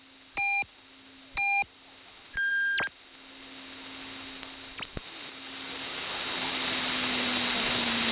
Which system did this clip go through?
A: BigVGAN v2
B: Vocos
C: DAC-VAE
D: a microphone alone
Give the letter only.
D